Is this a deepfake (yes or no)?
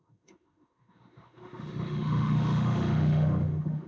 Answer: yes